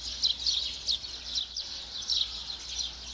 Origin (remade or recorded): recorded